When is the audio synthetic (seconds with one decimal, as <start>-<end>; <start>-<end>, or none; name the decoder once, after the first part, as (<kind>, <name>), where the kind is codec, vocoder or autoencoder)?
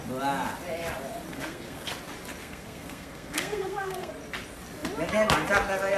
1.3-1.9 (codec, SNAC); 2.4-4.1